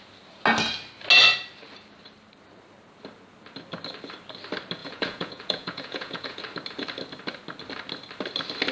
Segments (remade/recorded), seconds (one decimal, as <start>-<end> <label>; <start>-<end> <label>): 0.0-4.8 recorded; 4.8-6.4 remade; 6.4-8.7 recorded